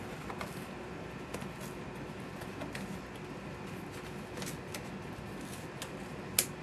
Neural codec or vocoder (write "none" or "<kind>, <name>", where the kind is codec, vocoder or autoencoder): none